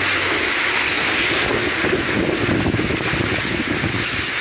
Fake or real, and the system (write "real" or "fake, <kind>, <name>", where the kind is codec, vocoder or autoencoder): real